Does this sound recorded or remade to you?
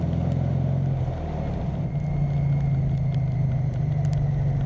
recorded